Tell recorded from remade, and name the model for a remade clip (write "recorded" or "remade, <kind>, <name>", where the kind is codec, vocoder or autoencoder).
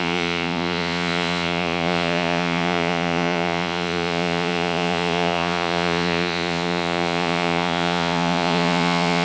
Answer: remade, vocoder, Vocos